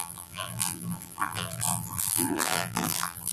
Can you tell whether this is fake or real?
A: fake